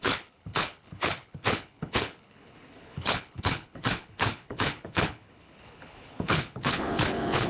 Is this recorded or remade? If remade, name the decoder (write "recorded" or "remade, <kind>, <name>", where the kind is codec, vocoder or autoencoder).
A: remade, codec, HILCodec